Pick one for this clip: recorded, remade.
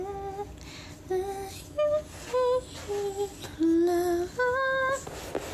recorded